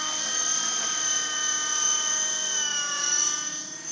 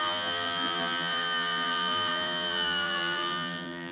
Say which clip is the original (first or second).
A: first